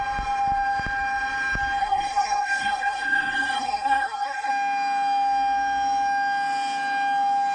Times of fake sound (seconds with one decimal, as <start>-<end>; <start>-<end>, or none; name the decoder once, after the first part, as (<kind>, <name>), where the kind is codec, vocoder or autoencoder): 1.8-4.5 (codec, SNAC)